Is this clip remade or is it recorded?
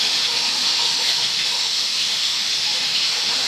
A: remade